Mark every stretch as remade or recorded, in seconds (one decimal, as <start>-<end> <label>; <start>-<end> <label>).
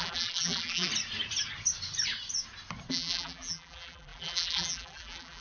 0.0-0.9 remade; 0.9-2.9 recorded; 2.9-5.4 remade